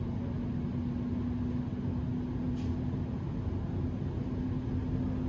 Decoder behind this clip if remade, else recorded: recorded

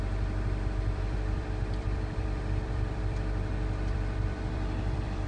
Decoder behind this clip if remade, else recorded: remade, vocoder, BigVGAN v2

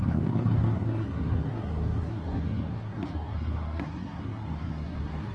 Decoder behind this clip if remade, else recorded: remade, codec, SNAC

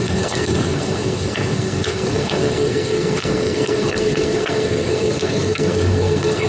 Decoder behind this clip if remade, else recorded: remade, codec, SNAC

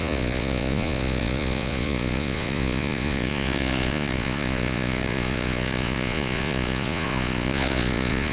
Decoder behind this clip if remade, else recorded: remade, vocoder, Vocos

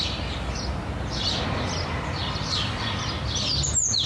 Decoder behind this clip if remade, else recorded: recorded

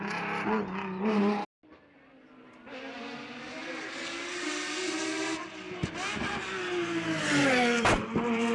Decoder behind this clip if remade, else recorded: recorded